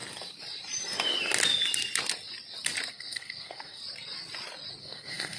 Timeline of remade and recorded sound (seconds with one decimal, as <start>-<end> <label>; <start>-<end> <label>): 0.0-2.9 recorded; 2.9-3.8 remade; 3.8-4.8 recorded; 4.8-5.4 remade